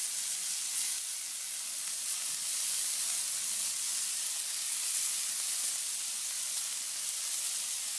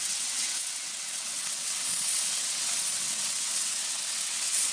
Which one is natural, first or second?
first